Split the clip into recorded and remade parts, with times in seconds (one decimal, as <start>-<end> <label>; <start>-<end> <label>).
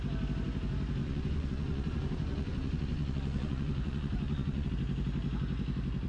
0.0-1.0 recorded; 1.0-4.7 remade; 4.7-6.1 recorded